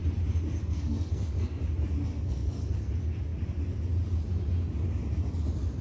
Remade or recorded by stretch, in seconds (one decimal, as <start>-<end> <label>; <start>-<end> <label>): 0.0-0.6 recorded; 0.6-1.6 remade; 1.6-2.1 recorded; 2.1-2.9 remade; 2.9-5.8 recorded